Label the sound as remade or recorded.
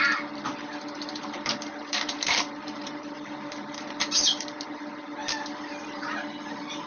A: remade